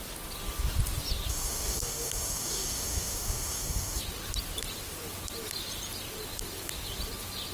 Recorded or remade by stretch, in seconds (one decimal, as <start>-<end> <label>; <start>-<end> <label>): 0.0-1.3 recorded; 1.3-4.0 remade; 4.0-7.5 recorded